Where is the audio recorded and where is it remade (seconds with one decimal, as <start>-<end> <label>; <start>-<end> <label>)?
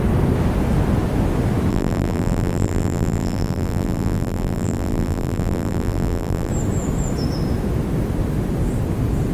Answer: 0.0-1.7 recorded; 1.7-6.5 remade; 6.5-9.3 recorded